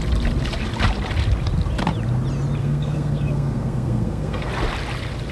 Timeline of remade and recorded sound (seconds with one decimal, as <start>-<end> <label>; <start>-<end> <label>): 0.0-2.6 recorded; 2.6-4.5 remade; 4.5-5.3 recorded